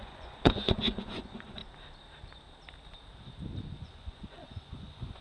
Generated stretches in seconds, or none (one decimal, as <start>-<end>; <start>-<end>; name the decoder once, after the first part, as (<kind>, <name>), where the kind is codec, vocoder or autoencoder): 0.0-1.6 (vocoder, Vocos); 3.8-5.2